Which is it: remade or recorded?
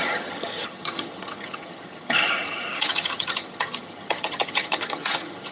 remade